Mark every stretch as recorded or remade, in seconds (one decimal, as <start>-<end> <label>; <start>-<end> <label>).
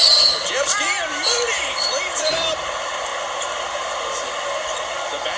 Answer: 0.0-3.1 remade; 3.1-3.8 recorded; 3.8-5.4 remade